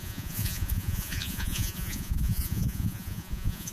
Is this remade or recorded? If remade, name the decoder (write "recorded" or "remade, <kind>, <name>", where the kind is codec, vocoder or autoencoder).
remade, vocoder, Vocos